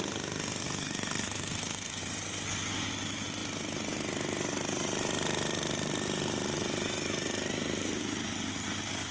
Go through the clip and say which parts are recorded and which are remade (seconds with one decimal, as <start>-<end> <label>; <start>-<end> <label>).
0.0-0.6 recorded; 0.6-2.0 remade; 2.0-9.1 recorded